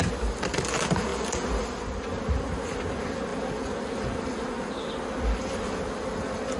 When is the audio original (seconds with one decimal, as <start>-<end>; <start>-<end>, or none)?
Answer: 0.0-6.6